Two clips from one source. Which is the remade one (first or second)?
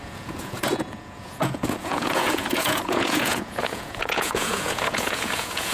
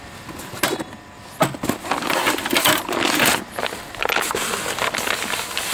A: first